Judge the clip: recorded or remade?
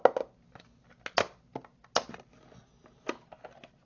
recorded